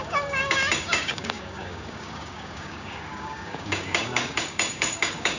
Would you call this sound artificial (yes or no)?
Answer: yes